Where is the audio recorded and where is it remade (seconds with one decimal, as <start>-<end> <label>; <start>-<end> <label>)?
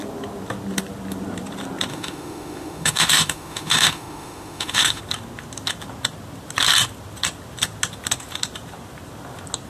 0.0-1.9 recorded; 1.9-5.0 remade; 5.0-9.7 recorded